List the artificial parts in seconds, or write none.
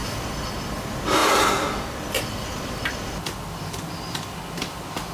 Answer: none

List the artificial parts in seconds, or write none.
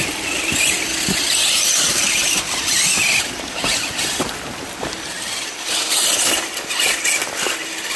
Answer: none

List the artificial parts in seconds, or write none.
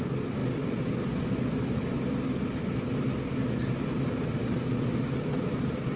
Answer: none